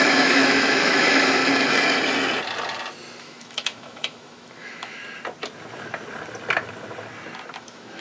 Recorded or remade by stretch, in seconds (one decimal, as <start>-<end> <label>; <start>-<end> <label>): 0.0-1.4 remade; 1.4-3.2 recorded; 3.2-5.0 remade; 5.0-7.6 recorded; 7.6-8.0 remade